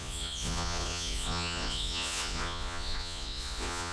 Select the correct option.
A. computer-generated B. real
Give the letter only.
A